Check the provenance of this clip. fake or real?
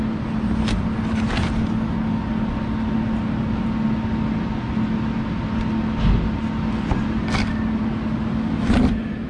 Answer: real